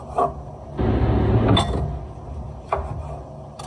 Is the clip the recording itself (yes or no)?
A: yes